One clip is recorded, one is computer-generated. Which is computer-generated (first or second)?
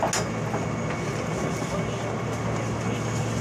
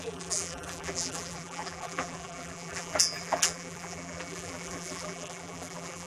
second